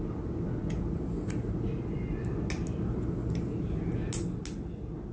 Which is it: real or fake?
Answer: real